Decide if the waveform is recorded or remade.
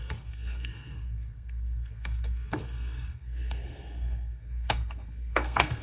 remade